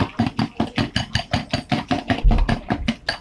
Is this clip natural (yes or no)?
yes